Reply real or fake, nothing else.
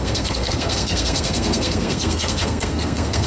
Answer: fake